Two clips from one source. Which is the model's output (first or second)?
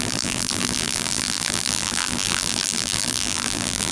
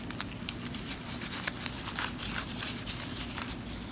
first